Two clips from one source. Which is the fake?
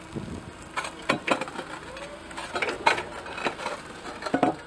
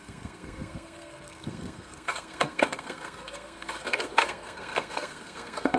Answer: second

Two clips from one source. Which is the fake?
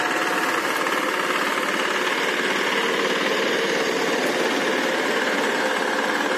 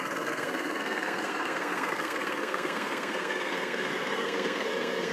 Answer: second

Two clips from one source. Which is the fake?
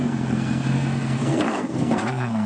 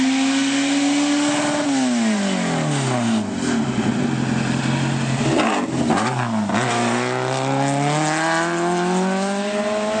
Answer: first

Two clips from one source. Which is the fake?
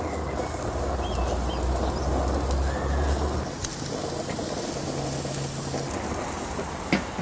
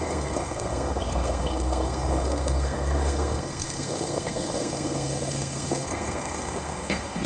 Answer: second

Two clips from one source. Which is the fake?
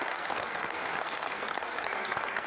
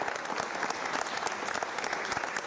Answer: first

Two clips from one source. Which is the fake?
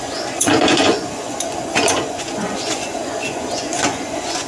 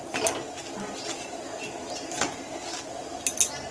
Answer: first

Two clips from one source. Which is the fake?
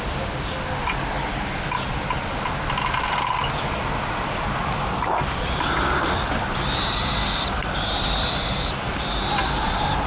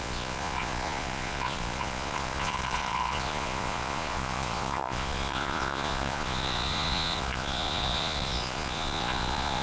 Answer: second